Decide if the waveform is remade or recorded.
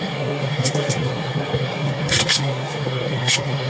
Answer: remade